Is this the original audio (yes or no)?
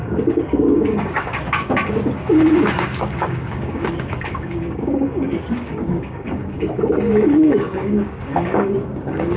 no